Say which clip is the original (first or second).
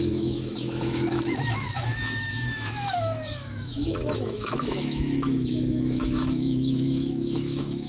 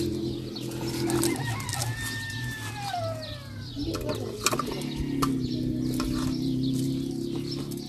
second